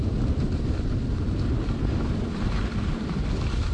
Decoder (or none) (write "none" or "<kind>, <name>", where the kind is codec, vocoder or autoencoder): none